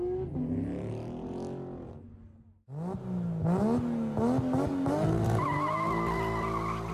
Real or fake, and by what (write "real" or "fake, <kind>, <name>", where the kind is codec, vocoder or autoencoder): real